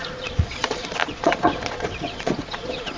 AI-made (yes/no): yes